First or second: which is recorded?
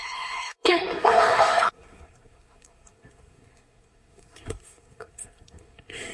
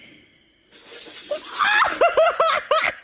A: second